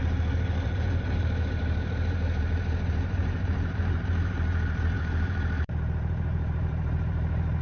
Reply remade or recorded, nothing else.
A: remade